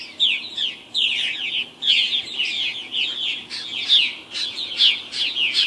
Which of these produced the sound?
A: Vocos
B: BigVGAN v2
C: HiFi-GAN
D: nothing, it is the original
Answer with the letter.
D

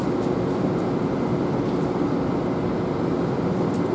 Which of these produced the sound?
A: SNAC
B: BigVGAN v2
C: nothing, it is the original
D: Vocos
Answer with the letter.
C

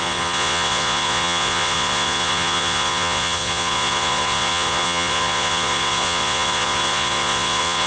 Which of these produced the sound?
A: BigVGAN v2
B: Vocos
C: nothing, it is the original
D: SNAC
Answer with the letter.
B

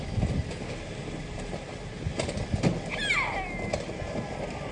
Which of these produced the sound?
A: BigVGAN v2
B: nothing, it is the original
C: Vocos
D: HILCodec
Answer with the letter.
B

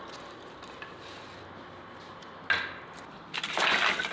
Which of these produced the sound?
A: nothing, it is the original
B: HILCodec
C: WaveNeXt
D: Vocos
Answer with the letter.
A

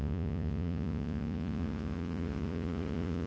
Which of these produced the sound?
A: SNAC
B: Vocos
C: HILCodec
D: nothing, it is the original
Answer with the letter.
B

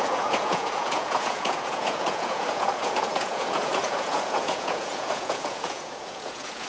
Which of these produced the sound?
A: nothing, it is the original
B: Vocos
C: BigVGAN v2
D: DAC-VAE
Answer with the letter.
B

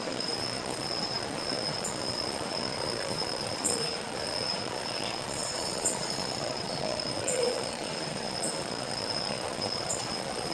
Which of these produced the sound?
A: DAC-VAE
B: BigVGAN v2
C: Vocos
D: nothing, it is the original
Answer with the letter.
C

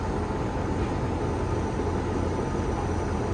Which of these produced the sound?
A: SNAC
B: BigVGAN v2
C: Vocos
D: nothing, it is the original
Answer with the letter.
D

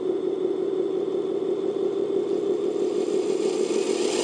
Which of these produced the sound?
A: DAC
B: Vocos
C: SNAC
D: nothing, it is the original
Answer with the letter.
D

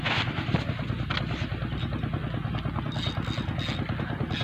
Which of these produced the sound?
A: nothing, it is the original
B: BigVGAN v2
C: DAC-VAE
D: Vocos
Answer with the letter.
A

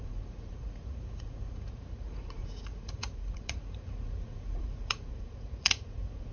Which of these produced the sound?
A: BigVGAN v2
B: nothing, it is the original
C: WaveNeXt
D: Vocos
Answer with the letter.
D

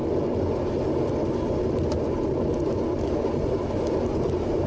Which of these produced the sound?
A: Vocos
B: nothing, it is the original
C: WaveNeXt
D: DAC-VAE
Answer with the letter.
B